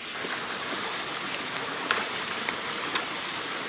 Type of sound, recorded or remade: recorded